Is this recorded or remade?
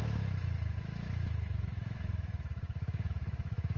remade